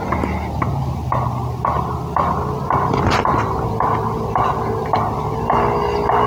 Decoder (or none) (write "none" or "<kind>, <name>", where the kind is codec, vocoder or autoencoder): none